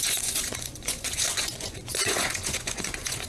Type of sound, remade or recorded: remade